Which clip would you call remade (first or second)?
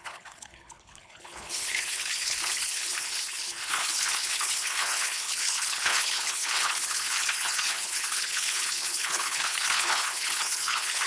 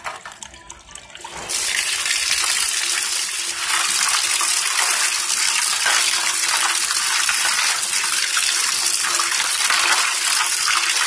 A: first